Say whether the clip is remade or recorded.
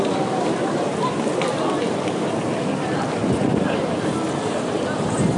remade